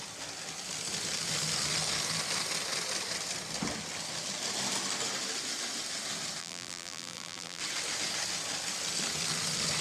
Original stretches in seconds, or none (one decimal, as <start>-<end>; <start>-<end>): 0.0-6.4; 7.6-9.8